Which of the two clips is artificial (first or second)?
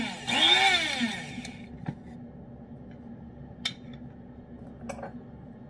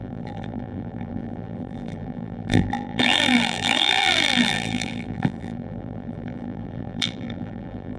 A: second